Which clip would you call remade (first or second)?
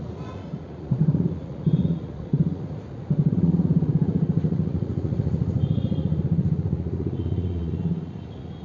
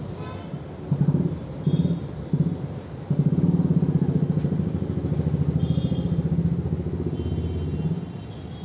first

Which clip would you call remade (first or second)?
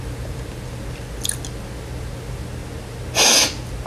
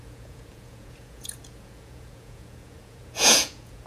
second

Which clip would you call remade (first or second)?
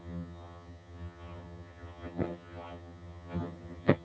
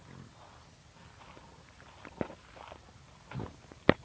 first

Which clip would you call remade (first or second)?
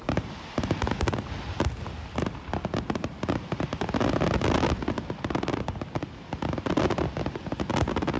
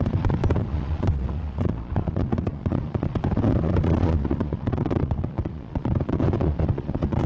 second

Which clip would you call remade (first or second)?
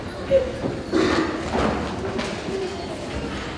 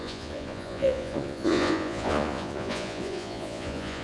second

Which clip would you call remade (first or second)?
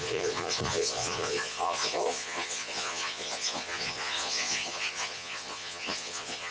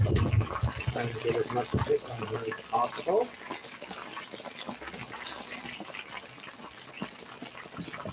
first